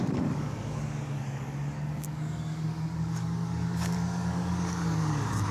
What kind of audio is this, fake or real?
fake